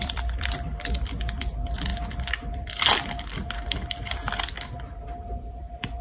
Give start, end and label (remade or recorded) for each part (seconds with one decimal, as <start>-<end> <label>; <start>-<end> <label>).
0.0-1.9 remade; 1.9-5.5 recorded; 5.5-6.0 remade